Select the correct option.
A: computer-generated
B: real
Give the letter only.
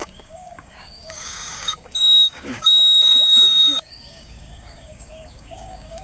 A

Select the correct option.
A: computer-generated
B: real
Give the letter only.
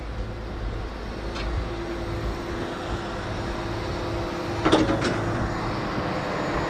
B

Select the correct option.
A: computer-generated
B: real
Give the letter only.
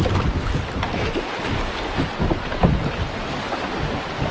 B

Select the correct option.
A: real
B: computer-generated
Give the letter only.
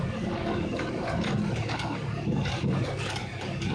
B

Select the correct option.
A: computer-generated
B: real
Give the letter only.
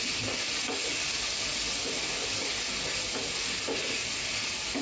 B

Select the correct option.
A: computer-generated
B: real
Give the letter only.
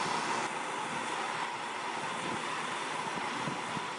B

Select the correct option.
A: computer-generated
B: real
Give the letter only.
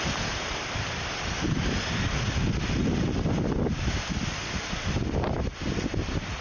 B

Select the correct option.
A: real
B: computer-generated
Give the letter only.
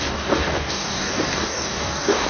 B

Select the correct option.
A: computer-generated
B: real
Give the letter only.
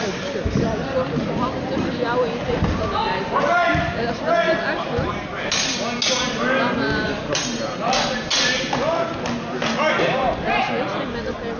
B